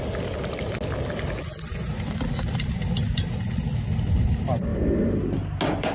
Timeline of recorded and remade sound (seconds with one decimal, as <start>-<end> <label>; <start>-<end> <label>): 0.0-1.4 recorded; 1.4-1.9 remade; 1.9-5.9 recorded